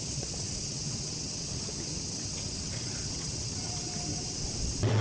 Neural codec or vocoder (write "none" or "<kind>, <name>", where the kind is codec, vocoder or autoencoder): vocoder, WaveNeXt